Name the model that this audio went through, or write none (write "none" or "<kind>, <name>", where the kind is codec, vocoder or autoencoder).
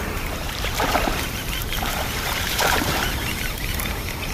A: vocoder, BigVGAN v2